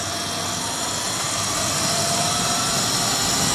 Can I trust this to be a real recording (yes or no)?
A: yes